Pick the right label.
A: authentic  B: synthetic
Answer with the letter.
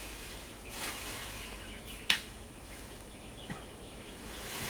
B